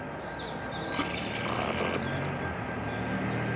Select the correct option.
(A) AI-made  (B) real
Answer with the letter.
B